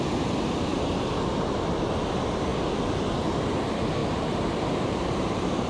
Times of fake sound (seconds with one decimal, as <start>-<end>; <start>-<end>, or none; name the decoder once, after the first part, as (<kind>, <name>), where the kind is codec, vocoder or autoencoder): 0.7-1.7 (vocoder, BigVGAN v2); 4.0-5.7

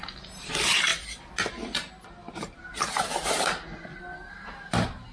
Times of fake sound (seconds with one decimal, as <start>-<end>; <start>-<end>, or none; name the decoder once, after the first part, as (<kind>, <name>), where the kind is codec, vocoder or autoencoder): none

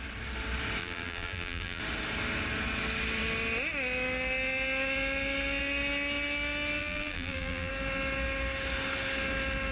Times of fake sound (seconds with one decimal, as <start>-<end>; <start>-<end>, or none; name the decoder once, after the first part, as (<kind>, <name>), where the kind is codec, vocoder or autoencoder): 0.8-1.8 (vocoder, BigVGAN v2); 6.8-7.7

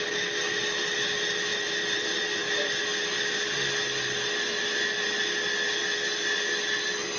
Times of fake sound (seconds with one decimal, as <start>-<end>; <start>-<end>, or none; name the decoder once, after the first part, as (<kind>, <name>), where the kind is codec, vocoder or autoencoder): 1.5-2.8 (vocoder, BigVGAN v2)

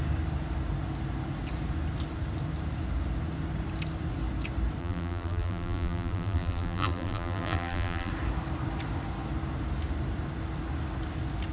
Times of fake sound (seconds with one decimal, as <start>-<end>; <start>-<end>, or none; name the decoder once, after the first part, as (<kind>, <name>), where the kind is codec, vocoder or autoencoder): 4.8-8.1 (vocoder, BigVGAN v2)

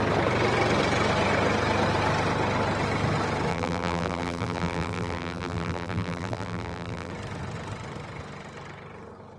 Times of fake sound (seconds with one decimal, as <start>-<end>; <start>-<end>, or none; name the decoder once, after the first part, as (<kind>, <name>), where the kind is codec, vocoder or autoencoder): 3.5-7.1 (vocoder, BigVGAN v2)